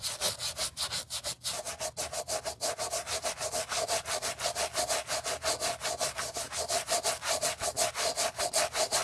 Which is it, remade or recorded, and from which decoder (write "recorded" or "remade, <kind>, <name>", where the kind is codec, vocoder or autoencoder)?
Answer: recorded